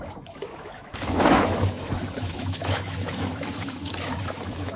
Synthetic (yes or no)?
yes